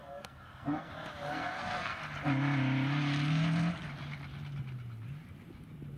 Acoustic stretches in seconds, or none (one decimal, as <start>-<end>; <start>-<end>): 0.9-1.3; 2.0-6.0